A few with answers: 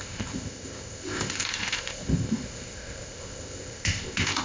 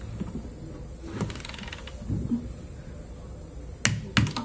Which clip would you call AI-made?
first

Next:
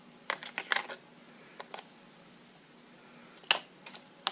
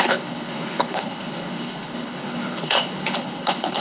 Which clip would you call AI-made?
second